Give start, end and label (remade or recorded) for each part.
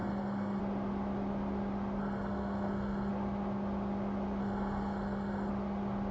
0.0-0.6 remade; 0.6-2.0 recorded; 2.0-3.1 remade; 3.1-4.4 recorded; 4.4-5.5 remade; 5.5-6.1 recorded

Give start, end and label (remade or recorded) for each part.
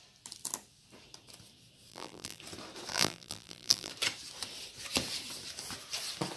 0.0-1.9 recorded; 1.9-2.4 remade; 2.4-2.9 recorded; 2.9-3.9 remade; 3.9-6.4 recorded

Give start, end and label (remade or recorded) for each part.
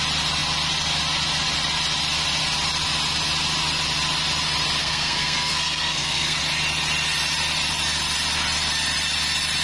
0.0-4.8 recorded; 4.8-6.4 remade; 6.4-9.6 recorded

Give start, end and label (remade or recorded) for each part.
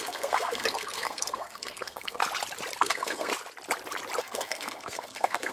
0.0-2.2 remade; 2.2-2.8 recorded; 2.8-3.3 remade; 3.3-4.2 recorded; 4.2-5.5 remade